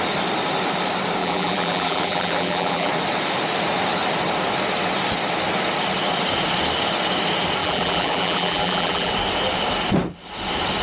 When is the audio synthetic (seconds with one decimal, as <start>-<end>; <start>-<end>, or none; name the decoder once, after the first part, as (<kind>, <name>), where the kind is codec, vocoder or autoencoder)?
1.2-2.9 (vocoder, BigVGAN v2); 7.6-9.1